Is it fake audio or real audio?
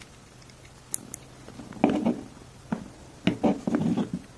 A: real